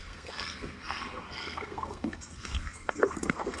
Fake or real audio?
fake